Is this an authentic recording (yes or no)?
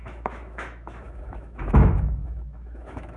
no